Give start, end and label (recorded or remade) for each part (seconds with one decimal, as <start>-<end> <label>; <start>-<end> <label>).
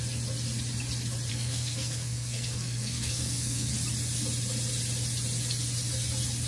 0.0-1.3 recorded; 1.3-3.7 remade; 3.7-6.5 recorded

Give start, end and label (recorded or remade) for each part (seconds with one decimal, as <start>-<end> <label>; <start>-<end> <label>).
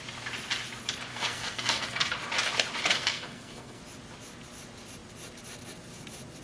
0.0-1.1 recorded; 1.1-2.1 remade; 2.1-2.9 recorded; 2.9-3.8 remade; 3.8-6.4 recorded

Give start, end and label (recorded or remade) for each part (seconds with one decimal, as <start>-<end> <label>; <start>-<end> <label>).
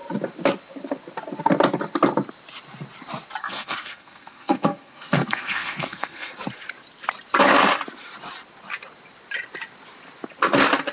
0.0-3.4 recorded; 3.4-6.3 remade; 6.3-10.9 recorded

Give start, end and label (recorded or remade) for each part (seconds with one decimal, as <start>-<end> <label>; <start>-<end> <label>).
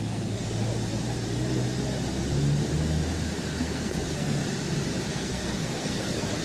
0.0-0.4 remade; 0.4-3.6 recorded; 3.6-4.4 remade; 4.4-5.1 recorded; 5.1-6.4 remade